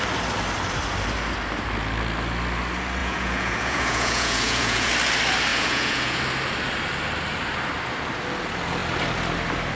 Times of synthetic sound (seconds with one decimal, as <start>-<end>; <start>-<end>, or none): 3.0-4.9; 5.5-6.2